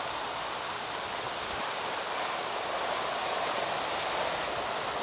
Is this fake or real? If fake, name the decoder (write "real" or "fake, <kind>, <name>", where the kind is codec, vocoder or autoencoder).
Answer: fake, vocoder, BigVGAN v2